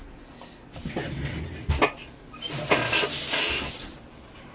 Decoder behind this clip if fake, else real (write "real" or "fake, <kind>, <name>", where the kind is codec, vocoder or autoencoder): real